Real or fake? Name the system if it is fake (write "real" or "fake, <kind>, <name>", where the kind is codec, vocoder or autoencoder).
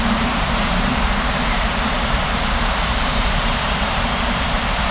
fake, vocoder, BigVGAN v2